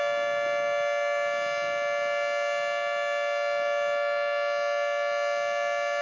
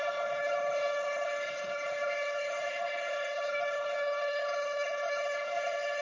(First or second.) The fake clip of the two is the second